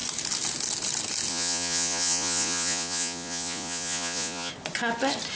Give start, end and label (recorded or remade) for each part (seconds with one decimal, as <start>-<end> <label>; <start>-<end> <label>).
0.0-1.3 recorded; 1.3-4.5 remade; 4.5-5.4 recorded